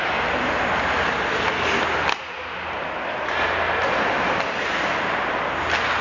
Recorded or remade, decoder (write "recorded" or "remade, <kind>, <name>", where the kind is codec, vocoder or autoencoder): recorded